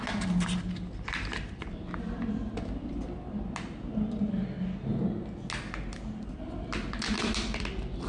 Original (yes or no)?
yes